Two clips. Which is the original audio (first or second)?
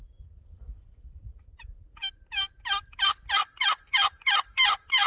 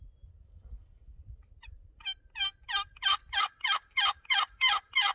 first